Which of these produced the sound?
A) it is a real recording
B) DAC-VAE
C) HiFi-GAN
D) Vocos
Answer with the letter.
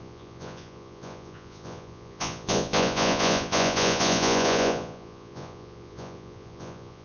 D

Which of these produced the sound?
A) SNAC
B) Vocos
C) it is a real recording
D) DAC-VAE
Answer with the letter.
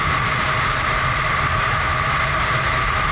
C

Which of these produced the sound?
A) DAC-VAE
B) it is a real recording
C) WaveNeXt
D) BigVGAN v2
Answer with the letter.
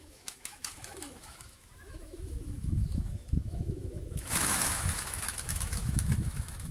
A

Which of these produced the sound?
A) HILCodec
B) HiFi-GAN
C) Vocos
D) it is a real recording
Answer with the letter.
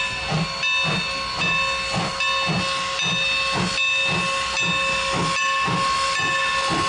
D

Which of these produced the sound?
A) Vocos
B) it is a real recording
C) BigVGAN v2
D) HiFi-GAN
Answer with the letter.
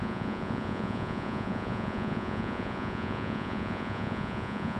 A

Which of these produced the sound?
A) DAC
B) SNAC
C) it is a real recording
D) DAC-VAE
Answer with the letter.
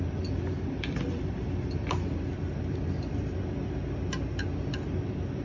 C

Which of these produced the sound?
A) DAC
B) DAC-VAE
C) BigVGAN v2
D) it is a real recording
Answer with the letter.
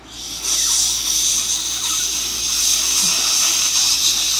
D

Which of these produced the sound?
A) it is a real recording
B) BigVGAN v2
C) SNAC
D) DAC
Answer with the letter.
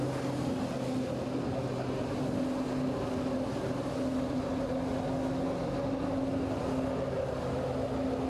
A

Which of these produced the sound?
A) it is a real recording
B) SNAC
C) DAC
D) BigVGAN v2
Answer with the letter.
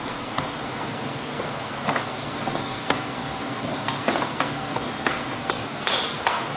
B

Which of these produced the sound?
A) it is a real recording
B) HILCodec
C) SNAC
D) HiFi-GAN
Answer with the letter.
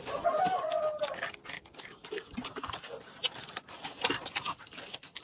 A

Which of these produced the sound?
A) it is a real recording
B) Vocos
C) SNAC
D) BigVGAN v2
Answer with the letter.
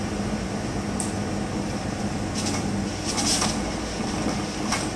A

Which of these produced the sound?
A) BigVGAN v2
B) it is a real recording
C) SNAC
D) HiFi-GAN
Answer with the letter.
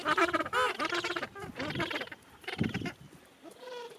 B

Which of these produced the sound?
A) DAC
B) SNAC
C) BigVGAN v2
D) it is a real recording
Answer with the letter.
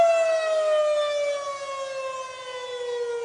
D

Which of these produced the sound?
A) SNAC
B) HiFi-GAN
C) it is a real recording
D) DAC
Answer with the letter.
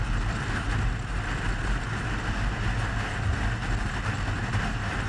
C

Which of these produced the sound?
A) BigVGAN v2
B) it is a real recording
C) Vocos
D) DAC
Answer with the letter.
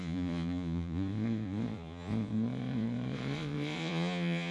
C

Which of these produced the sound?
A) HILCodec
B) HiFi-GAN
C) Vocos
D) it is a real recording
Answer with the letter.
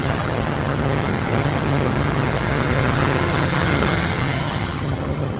B